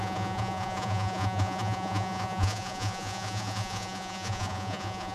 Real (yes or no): no